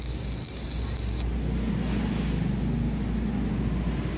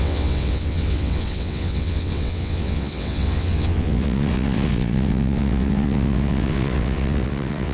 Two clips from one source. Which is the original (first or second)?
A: first